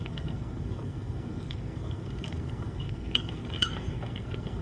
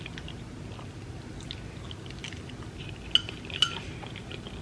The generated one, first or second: first